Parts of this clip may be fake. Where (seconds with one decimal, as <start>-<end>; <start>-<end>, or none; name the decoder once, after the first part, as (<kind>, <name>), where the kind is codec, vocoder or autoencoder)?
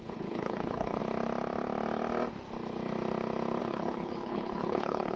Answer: 0.0-1.0 (codec, HILCodec); 3.6-5.2